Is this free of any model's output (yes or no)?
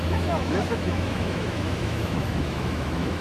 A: no